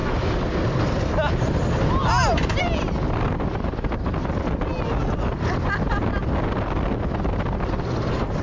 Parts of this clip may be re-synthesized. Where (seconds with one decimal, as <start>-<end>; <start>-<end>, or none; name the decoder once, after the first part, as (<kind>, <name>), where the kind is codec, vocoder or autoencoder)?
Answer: none